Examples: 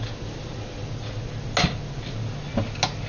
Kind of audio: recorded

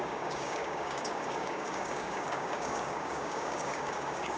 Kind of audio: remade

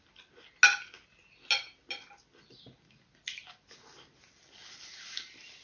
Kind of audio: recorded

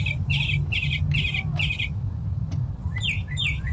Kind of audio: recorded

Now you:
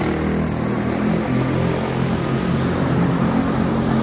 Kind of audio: recorded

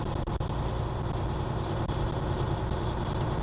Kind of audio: recorded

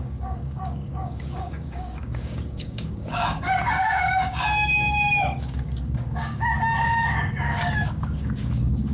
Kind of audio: remade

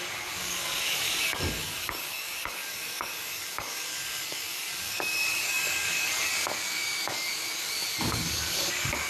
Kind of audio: remade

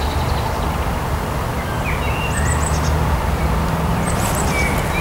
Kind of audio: recorded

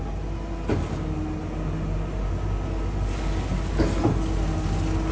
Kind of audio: recorded